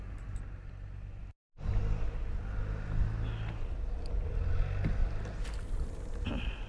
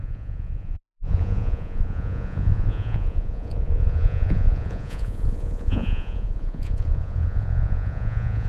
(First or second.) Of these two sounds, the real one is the first